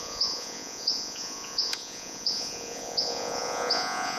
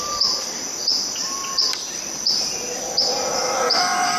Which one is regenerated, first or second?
first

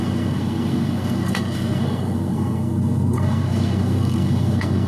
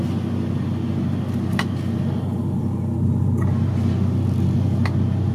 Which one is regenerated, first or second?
first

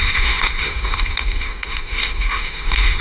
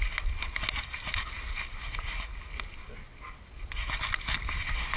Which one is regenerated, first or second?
first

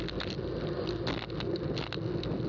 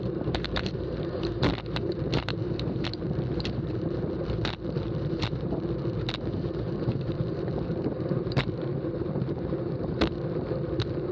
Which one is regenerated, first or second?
second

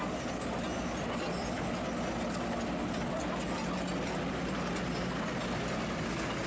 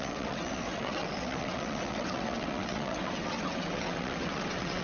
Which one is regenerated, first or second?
second